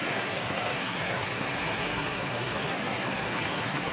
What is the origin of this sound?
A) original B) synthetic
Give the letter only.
B